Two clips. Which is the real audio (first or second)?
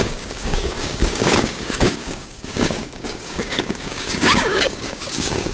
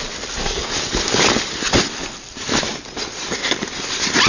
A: second